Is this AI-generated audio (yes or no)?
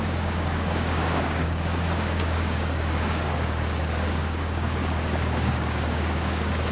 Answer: yes